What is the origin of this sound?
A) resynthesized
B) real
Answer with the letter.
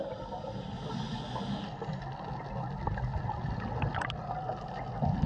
B